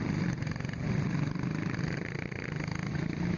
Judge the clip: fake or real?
real